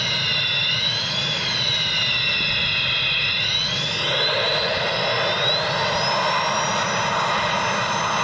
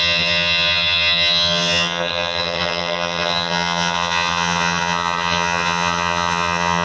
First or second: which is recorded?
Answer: first